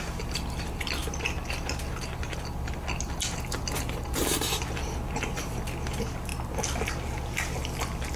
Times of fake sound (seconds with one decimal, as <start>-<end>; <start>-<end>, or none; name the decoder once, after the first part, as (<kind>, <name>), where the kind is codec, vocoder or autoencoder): none